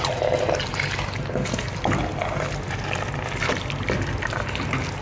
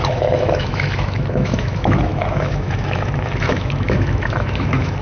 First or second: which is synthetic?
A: second